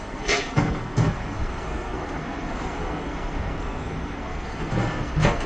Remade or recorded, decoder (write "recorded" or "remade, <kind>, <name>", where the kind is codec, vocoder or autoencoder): remade, codec, SNAC